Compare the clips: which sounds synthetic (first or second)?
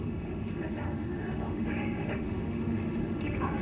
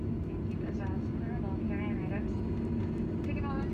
first